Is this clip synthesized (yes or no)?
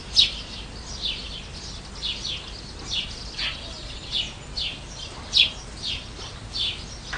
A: no